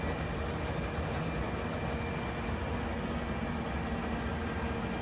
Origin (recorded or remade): recorded